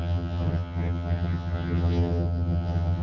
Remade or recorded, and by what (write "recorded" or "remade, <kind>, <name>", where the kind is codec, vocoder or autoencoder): remade, vocoder, HiFi-GAN